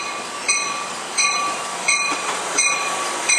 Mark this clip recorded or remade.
remade